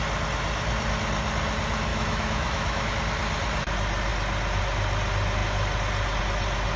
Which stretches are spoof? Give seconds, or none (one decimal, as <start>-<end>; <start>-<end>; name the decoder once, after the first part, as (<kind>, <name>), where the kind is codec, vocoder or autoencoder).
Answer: 1.9-2.9 (autoencoder, DAC-VAE)

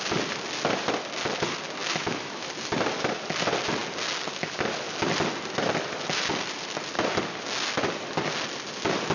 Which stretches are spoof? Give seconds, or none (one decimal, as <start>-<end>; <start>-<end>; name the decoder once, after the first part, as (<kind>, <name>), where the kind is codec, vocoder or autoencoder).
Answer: 1.8-2.5 (autoencoder, DAC-VAE)

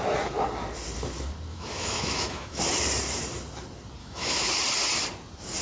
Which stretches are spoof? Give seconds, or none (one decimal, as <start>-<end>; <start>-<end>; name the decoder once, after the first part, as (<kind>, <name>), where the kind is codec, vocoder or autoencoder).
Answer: 1.5-2.6 (autoencoder, DAC-VAE); 4.0-4.5

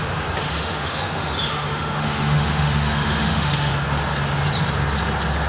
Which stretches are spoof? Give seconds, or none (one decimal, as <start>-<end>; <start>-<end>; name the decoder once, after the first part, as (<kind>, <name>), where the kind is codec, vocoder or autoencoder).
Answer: 0.4-3.7 (autoencoder, DAC-VAE)

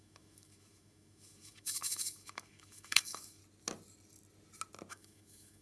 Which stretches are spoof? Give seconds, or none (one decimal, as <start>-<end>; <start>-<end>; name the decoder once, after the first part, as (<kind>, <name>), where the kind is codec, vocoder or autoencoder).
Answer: 0.0-3.4 (autoencoder, DAC-VAE); 4.9-5.6